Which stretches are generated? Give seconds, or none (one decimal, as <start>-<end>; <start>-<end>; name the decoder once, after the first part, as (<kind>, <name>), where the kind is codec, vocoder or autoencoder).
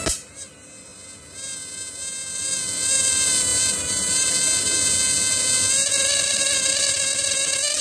0.0-0.9 (vocoder, BigVGAN v2); 2.3-6.9